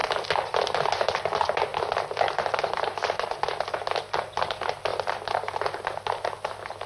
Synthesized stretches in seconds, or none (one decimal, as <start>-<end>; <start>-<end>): none